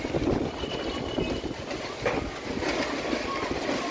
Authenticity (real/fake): real